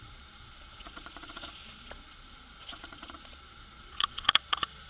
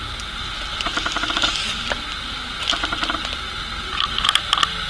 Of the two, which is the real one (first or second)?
second